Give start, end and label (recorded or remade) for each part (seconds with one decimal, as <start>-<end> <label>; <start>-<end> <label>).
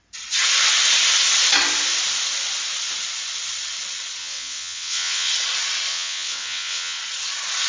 0.0-4.2 recorded; 4.2-5.3 remade; 5.3-5.9 recorded; 5.9-7.0 remade; 7.0-7.7 recorded